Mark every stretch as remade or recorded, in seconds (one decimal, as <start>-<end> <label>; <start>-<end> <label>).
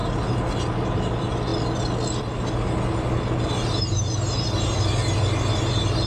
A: 0.0-6.1 recorded